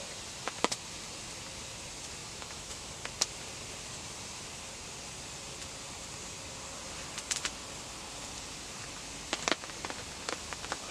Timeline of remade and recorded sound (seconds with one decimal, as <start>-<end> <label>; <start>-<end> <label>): 0.0-2.2 recorded; 2.2-2.9 remade; 2.9-10.9 recorded